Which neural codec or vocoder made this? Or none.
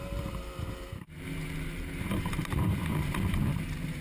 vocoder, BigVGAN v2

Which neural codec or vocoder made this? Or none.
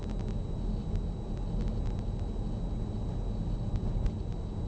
none